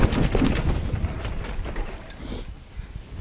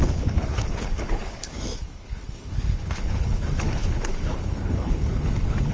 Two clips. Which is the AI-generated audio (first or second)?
second